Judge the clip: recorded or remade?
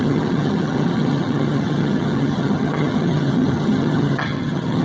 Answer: remade